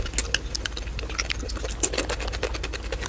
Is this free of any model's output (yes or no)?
yes